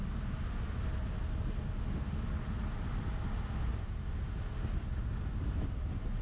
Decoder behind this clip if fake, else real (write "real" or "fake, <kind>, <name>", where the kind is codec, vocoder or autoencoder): real